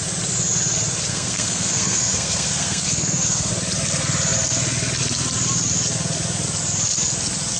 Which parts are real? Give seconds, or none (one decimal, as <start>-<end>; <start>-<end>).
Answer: 0.0-1.1; 3.5-7.6